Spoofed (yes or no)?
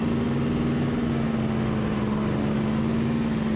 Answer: no